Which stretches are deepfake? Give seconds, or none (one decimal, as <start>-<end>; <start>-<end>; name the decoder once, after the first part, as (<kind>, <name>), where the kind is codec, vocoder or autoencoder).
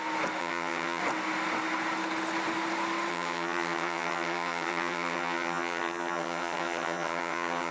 0.4-1.0 (vocoder, HiFi-GAN); 3.1-7.7